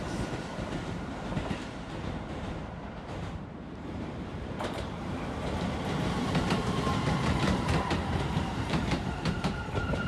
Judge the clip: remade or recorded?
remade